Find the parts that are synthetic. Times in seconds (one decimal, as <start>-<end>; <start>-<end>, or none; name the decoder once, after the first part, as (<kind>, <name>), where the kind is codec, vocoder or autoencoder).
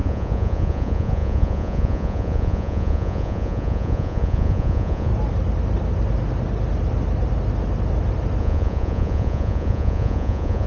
0.0-5.1 (vocoder, Vocos); 8.4-10.7